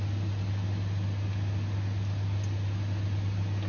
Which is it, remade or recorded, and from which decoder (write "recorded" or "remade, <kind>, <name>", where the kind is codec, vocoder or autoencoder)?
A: recorded